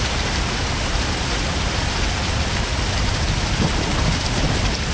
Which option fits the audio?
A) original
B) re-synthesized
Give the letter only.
A